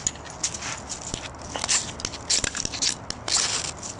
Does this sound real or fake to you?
real